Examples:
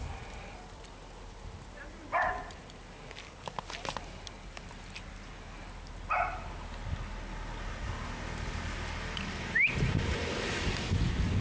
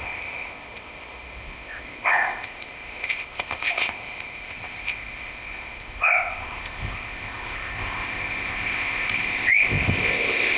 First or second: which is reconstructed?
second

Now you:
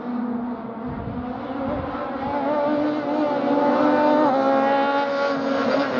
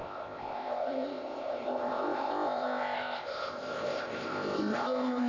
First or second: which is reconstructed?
second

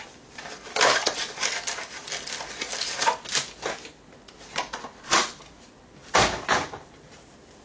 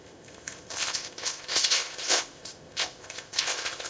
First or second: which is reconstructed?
second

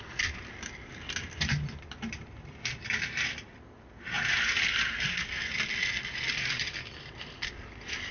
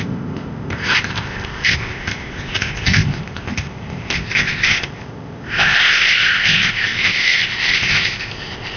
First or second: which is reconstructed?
second